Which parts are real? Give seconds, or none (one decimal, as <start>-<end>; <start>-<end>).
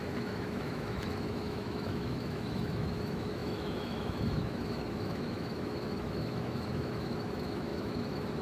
none